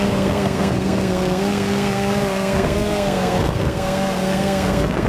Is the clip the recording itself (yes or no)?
no